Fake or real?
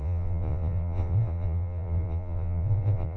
fake